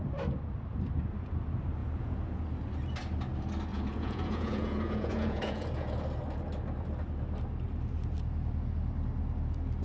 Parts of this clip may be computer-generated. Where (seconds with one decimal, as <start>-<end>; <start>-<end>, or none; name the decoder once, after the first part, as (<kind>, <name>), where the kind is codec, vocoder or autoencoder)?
1.8-2.4 (vocoder, Vocos); 3.7-5.9